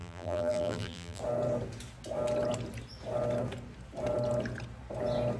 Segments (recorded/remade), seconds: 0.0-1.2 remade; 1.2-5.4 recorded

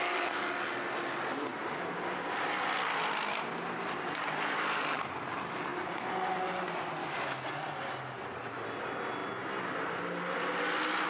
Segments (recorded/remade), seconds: 0.0-11.1 recorded

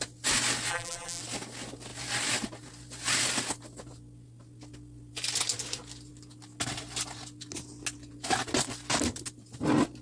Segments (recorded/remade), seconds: 0.0-0.7 recorded; 0.7-1.2 remade; 1.2-10.0 recorded